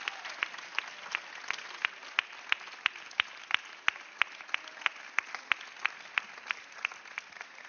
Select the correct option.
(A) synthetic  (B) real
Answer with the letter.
B